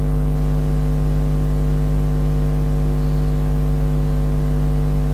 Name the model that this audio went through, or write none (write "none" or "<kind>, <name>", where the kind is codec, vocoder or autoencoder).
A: none